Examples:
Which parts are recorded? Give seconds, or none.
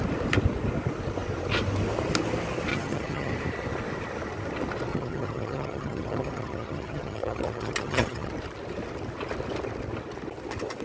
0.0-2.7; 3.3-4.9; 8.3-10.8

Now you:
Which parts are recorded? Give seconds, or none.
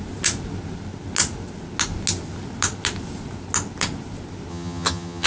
0.0-4.5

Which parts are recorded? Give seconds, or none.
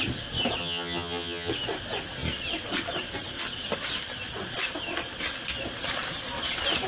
0.0-0.6; 1.5-6.9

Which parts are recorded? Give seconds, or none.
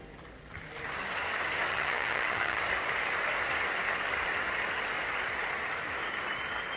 0.0-1.7; 2.6-6.8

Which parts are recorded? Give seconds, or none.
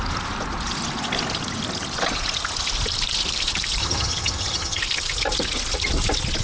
0.0-3.8; 4.8-6.4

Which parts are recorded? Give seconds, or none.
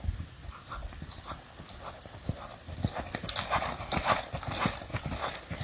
0.0-5.6